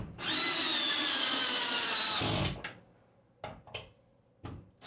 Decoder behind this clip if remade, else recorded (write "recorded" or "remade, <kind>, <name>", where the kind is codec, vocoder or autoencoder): recorded